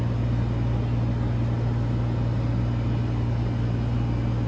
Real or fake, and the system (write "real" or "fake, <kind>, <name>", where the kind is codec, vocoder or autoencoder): real